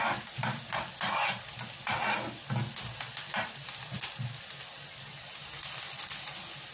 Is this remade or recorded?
recorded